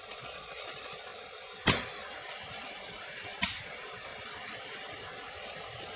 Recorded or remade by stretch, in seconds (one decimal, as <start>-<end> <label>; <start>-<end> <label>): 0.0-1.1 remade; 1.1-3.6 recorded; 3.6-4.1 remade; 4.1-6.0 recorded